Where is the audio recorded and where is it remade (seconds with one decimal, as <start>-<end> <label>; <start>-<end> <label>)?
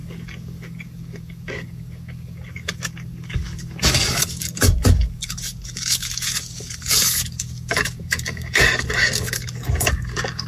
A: 0.0-10.5 remade